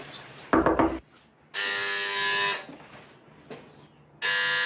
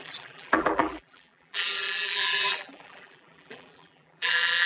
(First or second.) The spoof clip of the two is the second